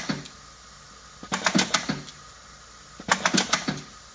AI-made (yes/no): no